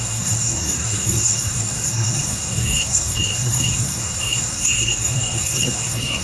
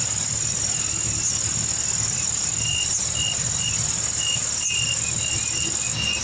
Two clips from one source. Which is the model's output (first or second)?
first